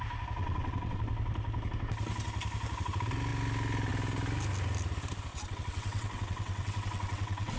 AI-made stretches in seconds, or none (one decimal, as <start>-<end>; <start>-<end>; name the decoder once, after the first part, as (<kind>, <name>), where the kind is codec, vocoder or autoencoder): 0.4-1.0 (vocoder, WaveNeXt); 5.3-7.6